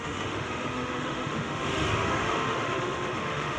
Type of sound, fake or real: fake